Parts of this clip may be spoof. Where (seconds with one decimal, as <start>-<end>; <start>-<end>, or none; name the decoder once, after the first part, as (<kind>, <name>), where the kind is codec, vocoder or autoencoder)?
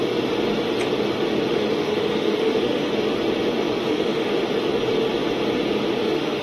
1.5-2.9 (autoencoder, DAC-VAE); 3.9-4.3; 6.0-6.4